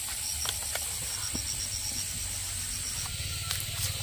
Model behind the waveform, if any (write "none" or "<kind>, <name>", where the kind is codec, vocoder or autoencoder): none